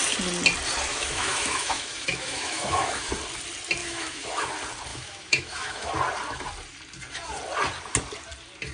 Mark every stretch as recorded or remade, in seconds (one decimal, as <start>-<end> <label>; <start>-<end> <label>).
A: 0.0-0.9 recorded; 0.9-3.1 remade; 3.1-3.8 recorded; 3.8-4.5 remade; 4.5-4.9 recorded; 4.9-5.9 remade; 5.9-8.7 recorded